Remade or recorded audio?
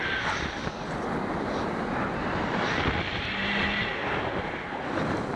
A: recorded